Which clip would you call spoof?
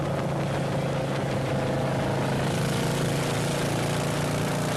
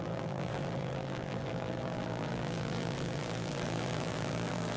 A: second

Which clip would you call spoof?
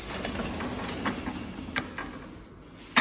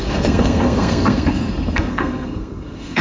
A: second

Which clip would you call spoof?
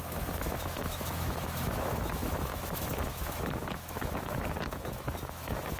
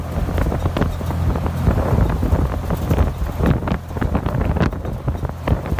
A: first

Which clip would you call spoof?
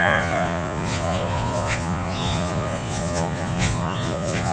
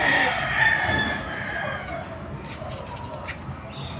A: first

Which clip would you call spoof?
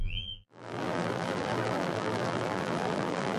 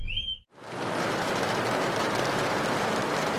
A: first